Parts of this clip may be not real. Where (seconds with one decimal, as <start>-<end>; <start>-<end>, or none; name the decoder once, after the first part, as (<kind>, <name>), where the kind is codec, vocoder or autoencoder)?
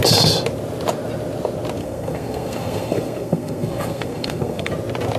1.8-4.7 (codec, SNAC)